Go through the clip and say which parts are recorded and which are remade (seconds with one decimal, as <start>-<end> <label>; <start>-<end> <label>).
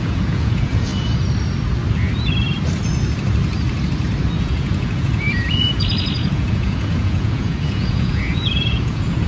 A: 0.0-0.9 remade; 0.9-4.4 recorded; 4.4-9.3 remade